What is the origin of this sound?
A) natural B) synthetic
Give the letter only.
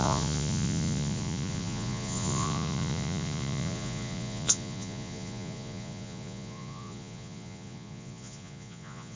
B